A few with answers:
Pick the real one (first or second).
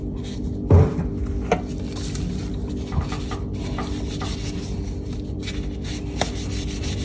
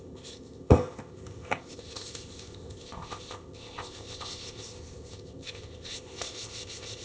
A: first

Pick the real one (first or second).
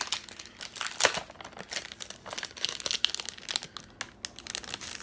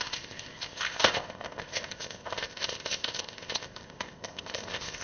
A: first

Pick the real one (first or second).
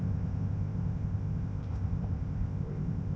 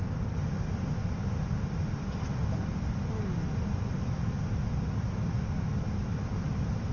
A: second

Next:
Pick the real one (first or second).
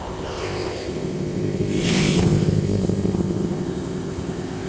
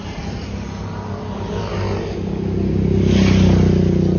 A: second